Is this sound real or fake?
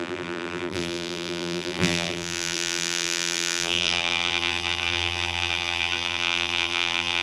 fake